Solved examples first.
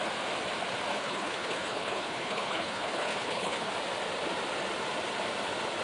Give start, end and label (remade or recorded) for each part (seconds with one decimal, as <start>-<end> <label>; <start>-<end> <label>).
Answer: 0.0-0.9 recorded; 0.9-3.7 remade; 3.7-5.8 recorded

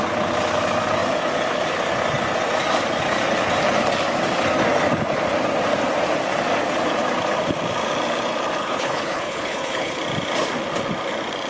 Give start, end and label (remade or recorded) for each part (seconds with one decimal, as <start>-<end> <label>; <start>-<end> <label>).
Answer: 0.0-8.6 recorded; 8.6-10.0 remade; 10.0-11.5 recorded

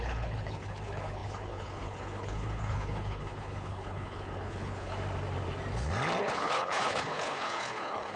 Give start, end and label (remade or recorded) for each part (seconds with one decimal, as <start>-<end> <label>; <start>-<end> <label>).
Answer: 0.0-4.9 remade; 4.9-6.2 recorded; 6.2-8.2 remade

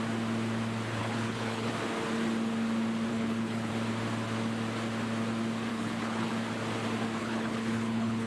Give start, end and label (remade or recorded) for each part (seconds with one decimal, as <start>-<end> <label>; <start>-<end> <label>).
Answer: 0.0-1.0 recorded; 1.0-1.7 remade; 1.7-3.1 recorded; 3.1-3.7 remade; 3.7-5.7 recorded; 5.7-6.3 remade; 6.3-7.2 recorded; 7.2-8.3 remade

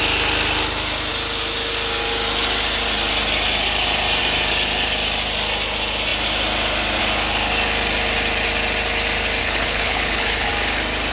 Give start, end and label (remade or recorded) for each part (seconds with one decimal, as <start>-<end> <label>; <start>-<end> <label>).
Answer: 0.0-9.4 recorded; 9.4-10.5 remade; 10.5-11.1 recorded

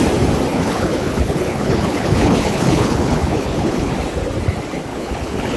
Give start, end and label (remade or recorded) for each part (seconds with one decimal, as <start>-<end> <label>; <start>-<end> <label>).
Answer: 0.0-0.5 recorded; 0.5-3.9 remade; 3.9-4.9 recorded; 4.9-5.6 remade

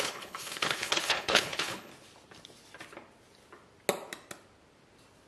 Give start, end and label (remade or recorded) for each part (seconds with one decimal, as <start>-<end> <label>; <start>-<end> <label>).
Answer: 0.0-1.9 remade; 1.9-5.3 recorded